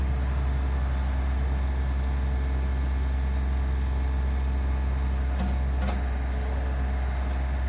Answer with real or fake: real